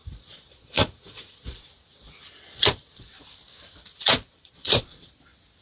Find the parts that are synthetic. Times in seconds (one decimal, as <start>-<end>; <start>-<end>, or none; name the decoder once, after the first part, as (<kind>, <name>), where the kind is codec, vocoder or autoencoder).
0.0-3.2 (vocoder, Vocos); 3.9-4.8